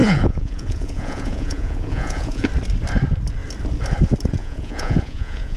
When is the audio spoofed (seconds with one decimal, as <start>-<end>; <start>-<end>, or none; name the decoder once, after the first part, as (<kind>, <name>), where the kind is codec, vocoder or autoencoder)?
0.0-2.5 (vocoder, Vocos); 4.4-5.6